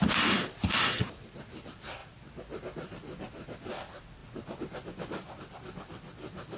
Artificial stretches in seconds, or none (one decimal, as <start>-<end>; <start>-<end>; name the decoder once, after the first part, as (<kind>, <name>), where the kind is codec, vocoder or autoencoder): 0.0-2.0 (vocoder, BigVGAN v2); 3.7-4.2